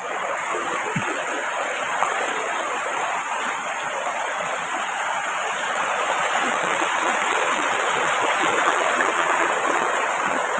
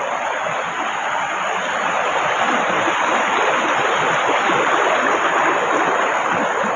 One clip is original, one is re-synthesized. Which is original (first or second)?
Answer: second